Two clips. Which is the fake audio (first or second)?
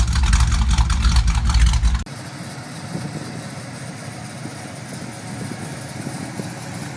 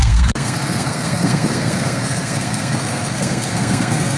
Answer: second